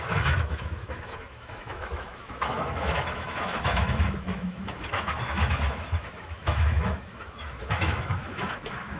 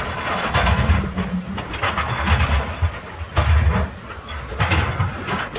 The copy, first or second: first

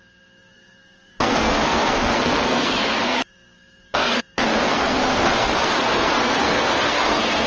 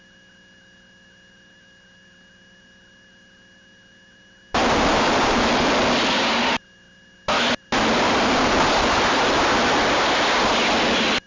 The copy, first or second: first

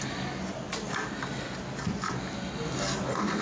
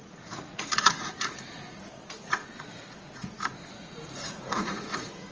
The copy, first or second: second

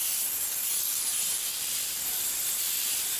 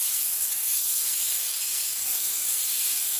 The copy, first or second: second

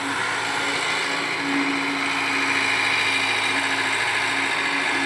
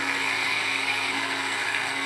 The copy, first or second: second